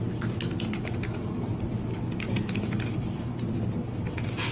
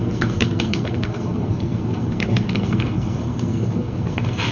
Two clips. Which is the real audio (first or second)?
first